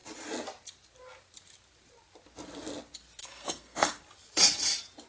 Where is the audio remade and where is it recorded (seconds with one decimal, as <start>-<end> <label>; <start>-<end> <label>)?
0.0-3.2 recorded; 3.2-4.0 remade; 4.0-5.1 recorded